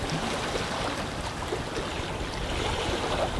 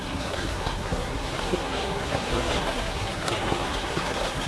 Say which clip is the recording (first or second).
first